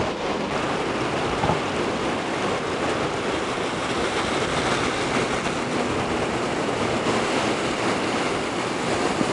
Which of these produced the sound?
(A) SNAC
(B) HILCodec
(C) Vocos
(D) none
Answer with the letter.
D